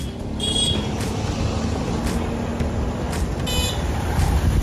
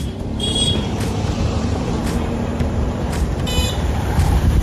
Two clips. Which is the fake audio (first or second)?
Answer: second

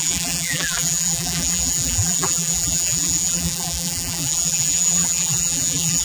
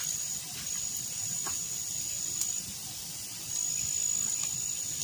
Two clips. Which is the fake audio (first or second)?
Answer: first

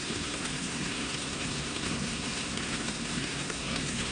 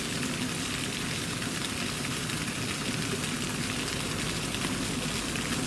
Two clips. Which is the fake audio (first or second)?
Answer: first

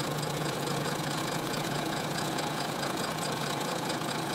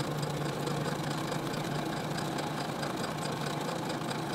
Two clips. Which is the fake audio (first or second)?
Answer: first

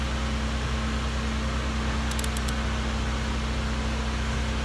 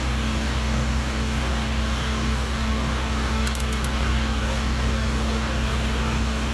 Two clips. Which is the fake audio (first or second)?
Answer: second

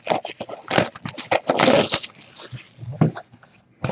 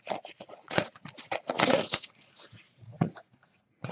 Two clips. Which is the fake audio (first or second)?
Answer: second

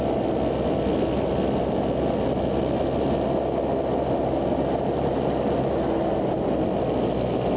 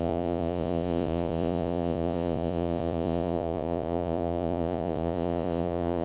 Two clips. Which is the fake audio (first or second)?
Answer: second